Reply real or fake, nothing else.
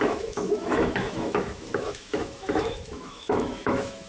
fake